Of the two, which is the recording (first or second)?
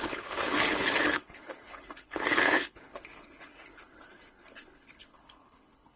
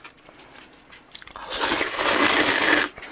second